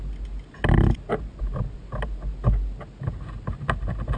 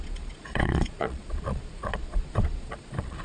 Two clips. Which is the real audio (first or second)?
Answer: first